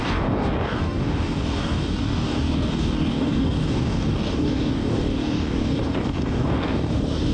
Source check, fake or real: fake